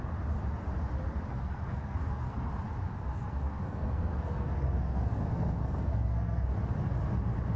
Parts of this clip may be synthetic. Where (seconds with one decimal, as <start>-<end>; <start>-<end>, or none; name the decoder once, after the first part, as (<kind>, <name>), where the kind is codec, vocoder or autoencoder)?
1.3-2.5 (codec, SNAC); 3.1-6.5